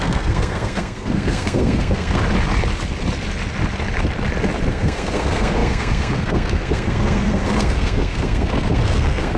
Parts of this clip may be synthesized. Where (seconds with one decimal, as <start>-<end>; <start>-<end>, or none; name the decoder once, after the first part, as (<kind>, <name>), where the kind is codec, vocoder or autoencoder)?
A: 0.0-2.2 (codec, SNAC); 4.7-9.4